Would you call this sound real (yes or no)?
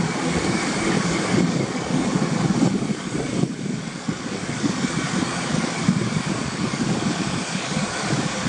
no